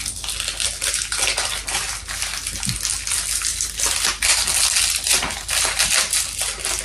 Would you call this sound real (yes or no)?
yes